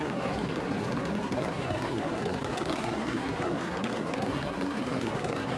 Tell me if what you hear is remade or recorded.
remade